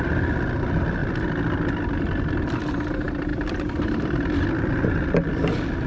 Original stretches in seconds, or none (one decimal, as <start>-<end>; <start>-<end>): 0.0-3.3; 5.3-5.9